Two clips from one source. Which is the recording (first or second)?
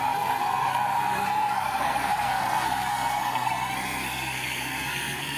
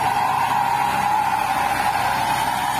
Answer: second